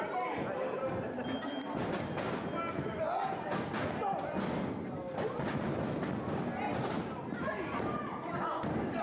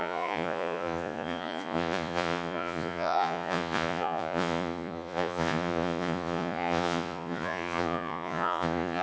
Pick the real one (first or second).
first